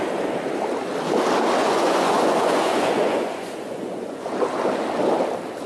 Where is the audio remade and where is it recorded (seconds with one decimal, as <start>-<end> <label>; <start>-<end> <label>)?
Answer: 0.0-1.6 recorded; 1.6-4.3 remade; 4.3-5.7 recorded